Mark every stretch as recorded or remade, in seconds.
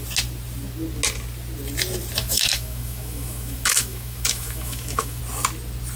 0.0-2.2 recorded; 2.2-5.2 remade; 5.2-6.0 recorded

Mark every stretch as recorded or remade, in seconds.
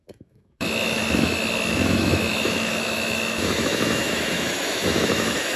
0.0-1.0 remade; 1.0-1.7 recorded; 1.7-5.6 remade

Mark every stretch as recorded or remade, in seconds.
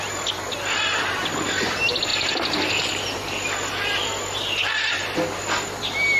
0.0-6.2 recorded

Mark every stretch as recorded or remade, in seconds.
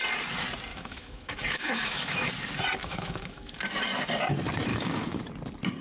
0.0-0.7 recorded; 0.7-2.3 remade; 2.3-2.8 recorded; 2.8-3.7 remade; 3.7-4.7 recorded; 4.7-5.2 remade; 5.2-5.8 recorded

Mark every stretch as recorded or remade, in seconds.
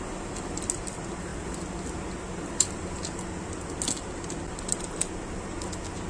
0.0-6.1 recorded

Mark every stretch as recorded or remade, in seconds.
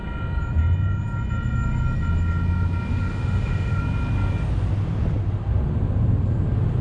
0.0-2.9 recorded; 2.9-3.8 remade; 3.8-6.8 recorded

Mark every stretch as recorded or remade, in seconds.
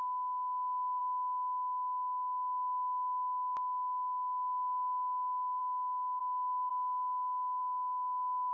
0.0-6.2 recorded; 6.2-6.7 remade; 6.7-8.5 recorded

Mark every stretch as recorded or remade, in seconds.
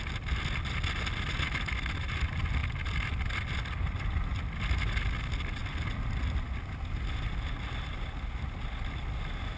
0.0-9.6 recorded